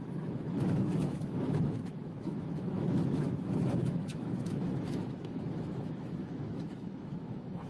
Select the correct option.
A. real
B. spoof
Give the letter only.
B